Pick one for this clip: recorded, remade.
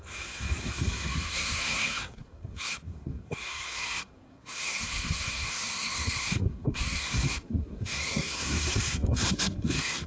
remade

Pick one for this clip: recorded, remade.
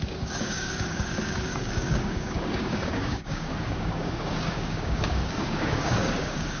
remade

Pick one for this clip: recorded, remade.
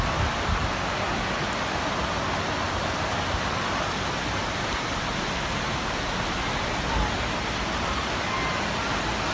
recorded